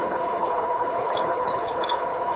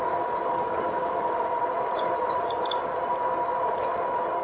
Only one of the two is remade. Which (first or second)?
first